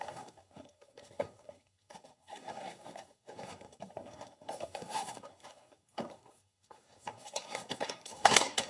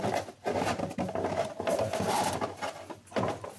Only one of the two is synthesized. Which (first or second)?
first